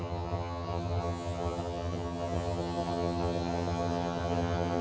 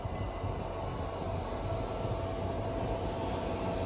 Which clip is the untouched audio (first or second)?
second